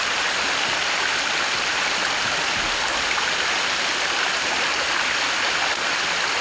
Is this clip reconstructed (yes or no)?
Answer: no